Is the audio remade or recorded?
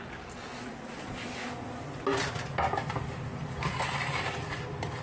recorded